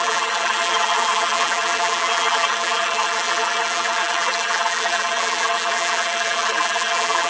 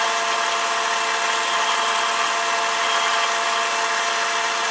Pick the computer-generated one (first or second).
first